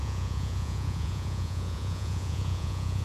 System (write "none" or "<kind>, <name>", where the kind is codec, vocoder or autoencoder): vocoder, Vocos